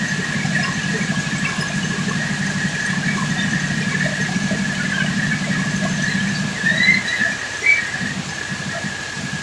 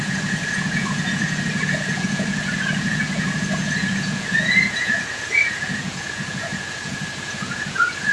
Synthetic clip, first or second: second